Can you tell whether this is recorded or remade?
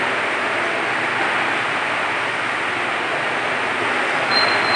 recorded